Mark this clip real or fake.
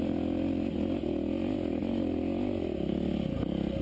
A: real